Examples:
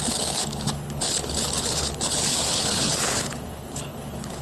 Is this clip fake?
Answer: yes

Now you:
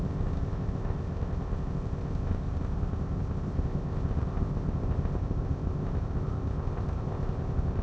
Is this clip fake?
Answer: yes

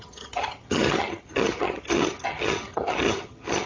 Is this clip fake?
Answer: yes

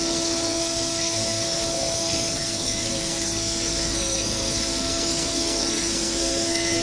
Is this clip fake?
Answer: yes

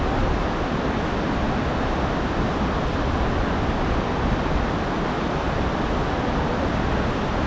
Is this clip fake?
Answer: no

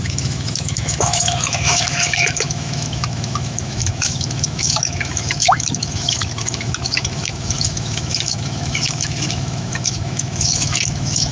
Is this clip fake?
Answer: yes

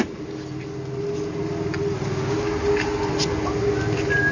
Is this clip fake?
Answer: no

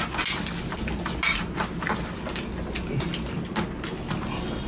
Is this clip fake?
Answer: no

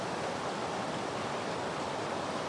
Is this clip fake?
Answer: no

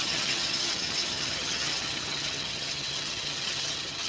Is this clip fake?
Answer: yes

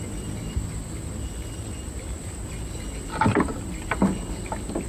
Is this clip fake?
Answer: yes